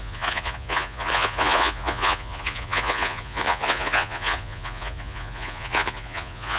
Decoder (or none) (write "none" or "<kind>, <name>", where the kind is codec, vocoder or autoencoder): vocoder, Vocos